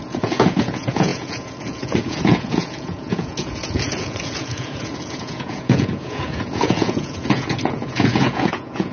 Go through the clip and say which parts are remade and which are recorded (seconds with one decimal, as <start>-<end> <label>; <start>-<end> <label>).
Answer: 0.0-8.9 remade